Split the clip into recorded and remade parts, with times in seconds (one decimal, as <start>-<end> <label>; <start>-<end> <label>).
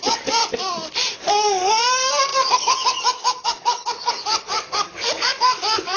0.0-0.4 remade; 0.4-1.3 recorded; 1.3-6.0 remade